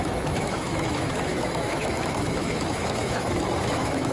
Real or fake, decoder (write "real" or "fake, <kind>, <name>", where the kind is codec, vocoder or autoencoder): fake, autoencoder, DAC-VAE